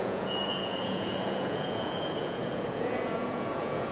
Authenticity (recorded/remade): remade